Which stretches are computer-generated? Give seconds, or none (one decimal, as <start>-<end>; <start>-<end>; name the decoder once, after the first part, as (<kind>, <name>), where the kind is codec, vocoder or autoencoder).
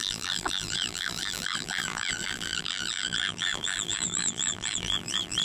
0.0-5.4 (vocoder, BigVGAN v2)